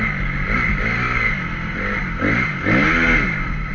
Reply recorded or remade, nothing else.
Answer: recorded